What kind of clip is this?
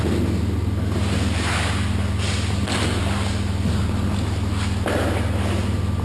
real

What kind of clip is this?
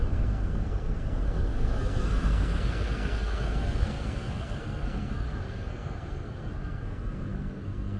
fake